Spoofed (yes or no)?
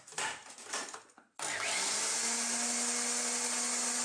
no